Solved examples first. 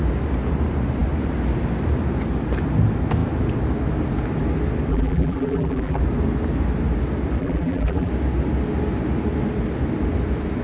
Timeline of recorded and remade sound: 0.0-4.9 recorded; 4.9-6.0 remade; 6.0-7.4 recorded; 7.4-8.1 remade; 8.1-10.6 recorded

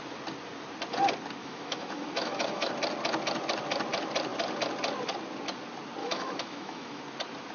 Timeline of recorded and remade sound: 0.0-1.4 recorded; 1.4-2.7 remade; 2.7-6.0 recorded; 6.0-7.0 remade; 7.0-7.5 recorded

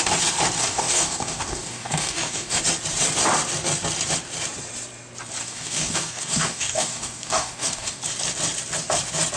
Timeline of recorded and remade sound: 0.0-0.6 recorded; 0.6-2.6 remade; 2.6-5.4 recorded; 5.4-8.0 remade; 8.0-9.4 recorded

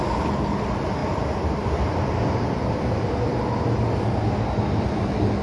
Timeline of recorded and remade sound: 0.0-5.4 recorded

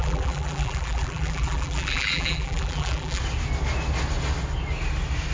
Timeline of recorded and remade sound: 0.0-3.2 remade; 3.2-5.3 recorded

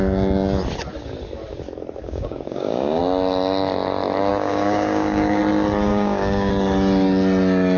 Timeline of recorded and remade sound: 0.0-2.0 recorded; 2.0-3.0 remade; 3.0-4.3 recorded; 4.3-5.4 remade; 5.4-5.9 recorded; 5.9-6.5 remade; 6.5-7.8 recorded